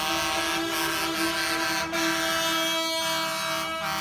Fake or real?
real